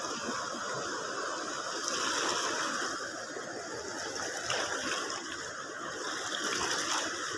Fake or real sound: real